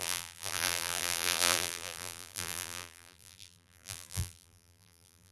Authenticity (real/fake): fake